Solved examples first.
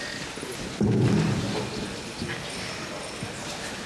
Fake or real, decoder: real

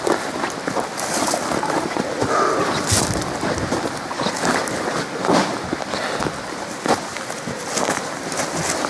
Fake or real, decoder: real